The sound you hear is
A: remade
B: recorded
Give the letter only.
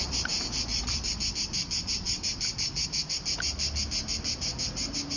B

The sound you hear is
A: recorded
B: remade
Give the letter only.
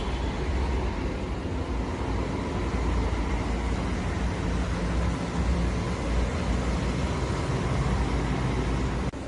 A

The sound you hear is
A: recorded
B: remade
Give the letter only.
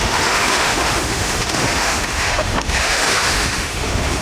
B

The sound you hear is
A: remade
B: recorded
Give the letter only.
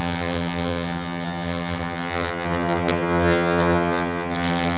A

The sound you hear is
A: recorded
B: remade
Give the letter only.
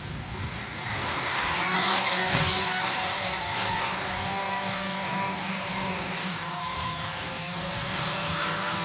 B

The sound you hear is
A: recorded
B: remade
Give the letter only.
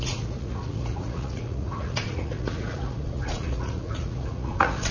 B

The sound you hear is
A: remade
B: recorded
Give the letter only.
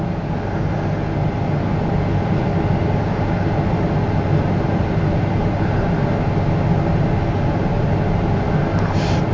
B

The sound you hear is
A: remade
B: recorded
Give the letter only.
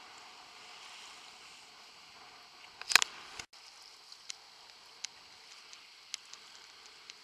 B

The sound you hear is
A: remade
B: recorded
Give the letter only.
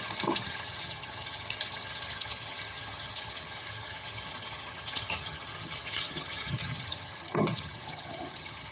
A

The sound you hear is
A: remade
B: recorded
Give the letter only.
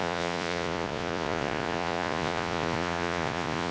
A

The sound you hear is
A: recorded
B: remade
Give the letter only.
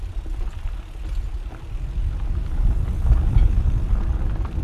A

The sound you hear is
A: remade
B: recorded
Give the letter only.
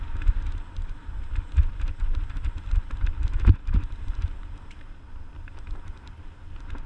B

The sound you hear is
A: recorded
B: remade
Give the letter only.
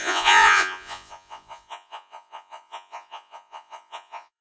B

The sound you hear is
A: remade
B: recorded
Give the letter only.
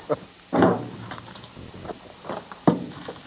A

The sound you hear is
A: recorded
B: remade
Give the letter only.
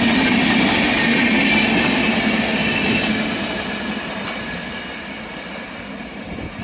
A